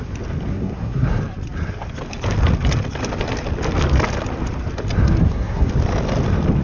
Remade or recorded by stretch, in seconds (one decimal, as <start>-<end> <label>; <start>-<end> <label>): 0.0-0.5 recorded; 0.5-1.2 remade; 1.2-5.2 recorded; 5.2-5.7 remade; 5.7-6.6 recorded